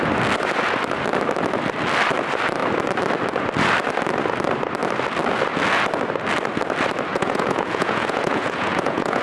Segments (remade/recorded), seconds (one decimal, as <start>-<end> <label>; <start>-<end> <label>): 0.0-7.1 recorded; 7.1-9.2 remade